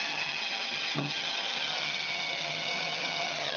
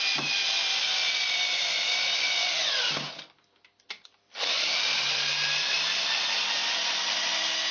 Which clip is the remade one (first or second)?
first